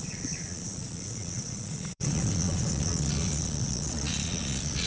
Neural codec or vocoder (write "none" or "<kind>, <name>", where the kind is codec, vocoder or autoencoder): vocoder, Vocos